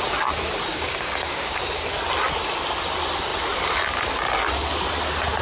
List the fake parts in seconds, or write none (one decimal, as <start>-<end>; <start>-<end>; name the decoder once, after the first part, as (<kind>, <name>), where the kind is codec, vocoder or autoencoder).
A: 0.7-1.6 (codec, DAC)